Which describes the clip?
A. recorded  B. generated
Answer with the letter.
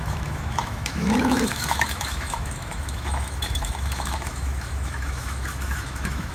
B